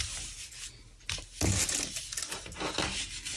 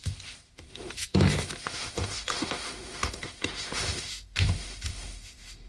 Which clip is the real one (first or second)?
first